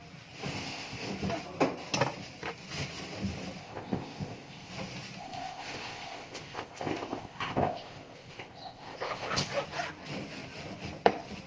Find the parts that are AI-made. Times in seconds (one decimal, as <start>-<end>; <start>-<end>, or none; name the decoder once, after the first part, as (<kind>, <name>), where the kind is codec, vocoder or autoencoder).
0.5-1.1 (codec, ZipCodec); 3.6-4.7; 5.2-9.5